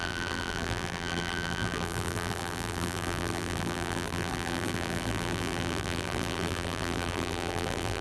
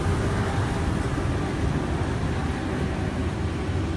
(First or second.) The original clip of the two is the second